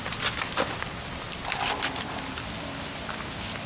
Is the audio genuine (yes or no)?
yes